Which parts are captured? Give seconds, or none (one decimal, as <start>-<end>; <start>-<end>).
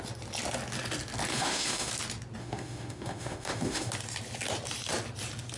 0.0-1.3; 1.9-2.4; 3.9-5.6